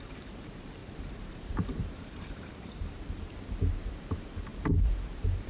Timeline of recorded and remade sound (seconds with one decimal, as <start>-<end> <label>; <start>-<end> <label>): 0.0-5.5 remade